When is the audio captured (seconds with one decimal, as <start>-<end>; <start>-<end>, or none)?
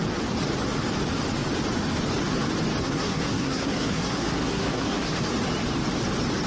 0.0-2.8; 5.2-6.5